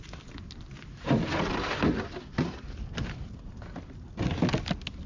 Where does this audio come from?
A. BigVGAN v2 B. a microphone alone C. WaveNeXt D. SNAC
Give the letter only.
B